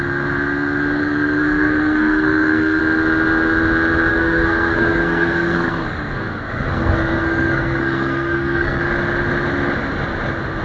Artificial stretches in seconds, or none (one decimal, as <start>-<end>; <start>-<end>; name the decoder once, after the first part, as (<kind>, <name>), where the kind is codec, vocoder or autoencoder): 1.0-2.8 (codec, SNAC); 4.1-8.8